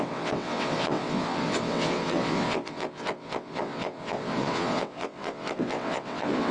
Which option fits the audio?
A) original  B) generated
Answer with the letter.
B